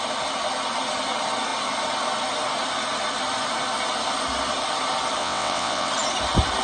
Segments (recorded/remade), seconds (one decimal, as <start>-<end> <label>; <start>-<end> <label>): 0.0-5.2 recorded; 5.2-5.9 remade; 5.9-6.6 recorded